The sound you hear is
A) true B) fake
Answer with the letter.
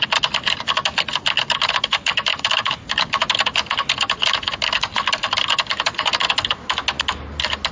A